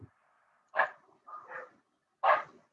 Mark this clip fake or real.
real